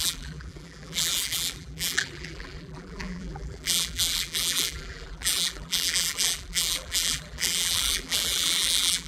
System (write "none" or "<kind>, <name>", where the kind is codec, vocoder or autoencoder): vocoder, BigVGAN v2